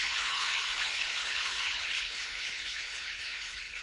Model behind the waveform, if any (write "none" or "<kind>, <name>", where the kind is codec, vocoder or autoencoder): codec, HILCodec